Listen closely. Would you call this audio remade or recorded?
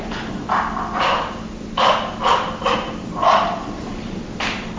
recorded